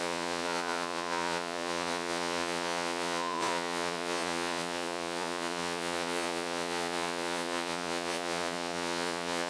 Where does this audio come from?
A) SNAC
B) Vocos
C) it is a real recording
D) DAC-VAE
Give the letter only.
B